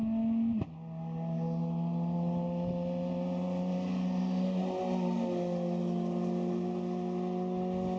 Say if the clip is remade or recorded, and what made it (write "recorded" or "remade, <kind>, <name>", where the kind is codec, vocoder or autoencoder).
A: recorded